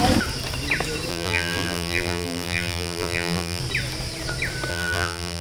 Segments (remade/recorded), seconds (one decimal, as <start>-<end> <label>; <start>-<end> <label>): 0.0-1.1 recorded; 1.1-3.6 remade; 3.6-4.7 recorded; 4.7-5.4 remade